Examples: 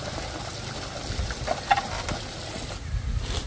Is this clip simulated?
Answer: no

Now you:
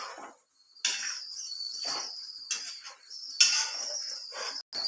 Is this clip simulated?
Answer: no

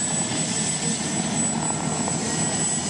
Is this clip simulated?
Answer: no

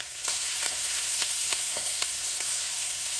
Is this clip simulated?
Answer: yes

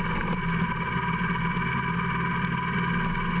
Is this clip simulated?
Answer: no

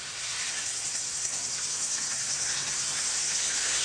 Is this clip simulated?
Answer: yes